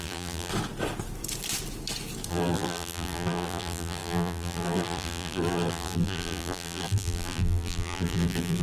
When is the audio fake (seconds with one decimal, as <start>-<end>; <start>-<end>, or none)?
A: 0.0-0.5; 2.3-8.6